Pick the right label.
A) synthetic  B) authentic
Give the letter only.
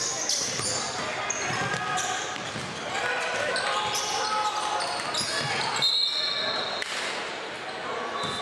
B